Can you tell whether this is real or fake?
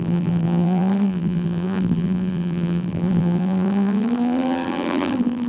fake